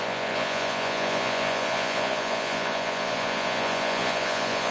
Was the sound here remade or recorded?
remade